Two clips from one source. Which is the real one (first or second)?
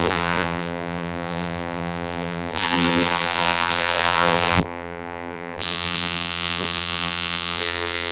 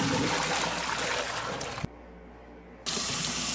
second